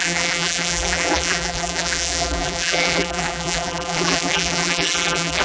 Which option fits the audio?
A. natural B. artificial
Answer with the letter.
B